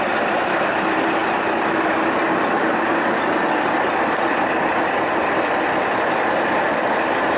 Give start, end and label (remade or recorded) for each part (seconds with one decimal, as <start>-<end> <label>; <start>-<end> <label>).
0.0-7.4 recorded